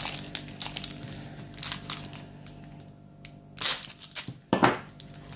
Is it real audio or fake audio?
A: real